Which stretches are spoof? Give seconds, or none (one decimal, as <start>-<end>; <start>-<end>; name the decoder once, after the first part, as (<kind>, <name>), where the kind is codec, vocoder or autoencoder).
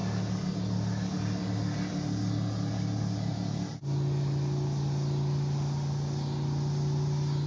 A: none